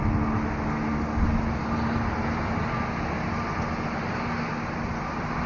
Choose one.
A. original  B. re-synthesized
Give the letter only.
A